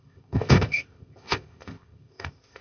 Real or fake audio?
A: fake